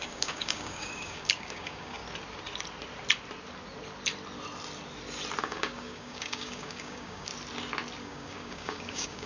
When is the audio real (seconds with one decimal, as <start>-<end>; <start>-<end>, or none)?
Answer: 2.0-5.4; 7.3-8.0